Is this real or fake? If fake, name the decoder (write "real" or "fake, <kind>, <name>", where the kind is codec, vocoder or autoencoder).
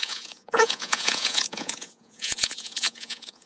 fake, vocoder, Vocos